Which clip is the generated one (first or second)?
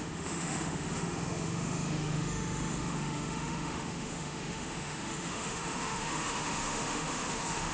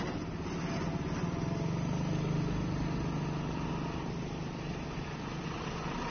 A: first